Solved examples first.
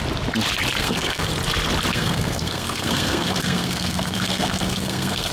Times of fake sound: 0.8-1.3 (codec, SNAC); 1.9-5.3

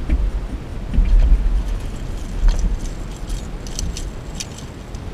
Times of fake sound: none

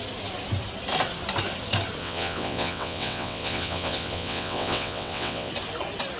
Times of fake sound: 2.0-5.5 (vocoder, WaveNeXt)

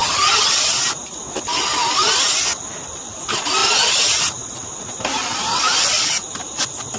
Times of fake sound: 0.0-0.5 (vocoder, HiFi-GAN)

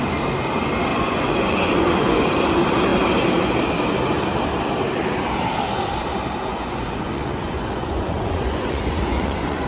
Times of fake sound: 0.9-2.3 (vocoder, Vocos); 6.5-9.7

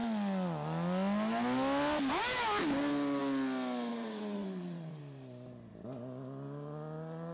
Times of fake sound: 3.9-5.0 (vocoder, WaveNeXt)